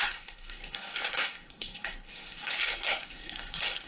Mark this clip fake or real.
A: fake